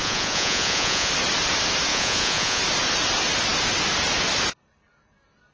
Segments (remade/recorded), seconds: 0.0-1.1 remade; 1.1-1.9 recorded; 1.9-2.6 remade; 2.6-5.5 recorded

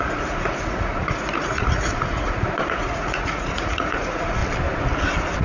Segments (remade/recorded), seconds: 0.0-4.4 remade; 4.4-5.4 recorded

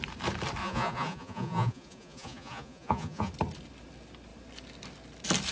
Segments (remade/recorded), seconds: 0.0-0.6 recorded; 0.6-3.3 remade; 3.3-5.5 recorded

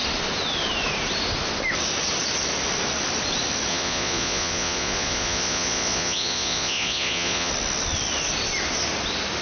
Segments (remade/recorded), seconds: 0.0-3.7 recorded; 3.7-7.5 remade; 7.5-9.4 recorded

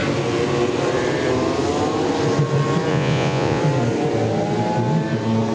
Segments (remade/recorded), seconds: 0.0-2.9 recorded; 2.9-3.6 remade; 3.6-5.5 recorded